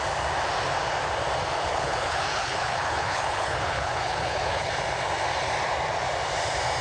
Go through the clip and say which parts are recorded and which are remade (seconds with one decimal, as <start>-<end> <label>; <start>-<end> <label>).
0.0-1.7 recorded; 1.7-4.7 remade; 4.7-6.8 recorded